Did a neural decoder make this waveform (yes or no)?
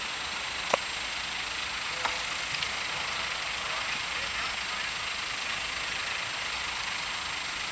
no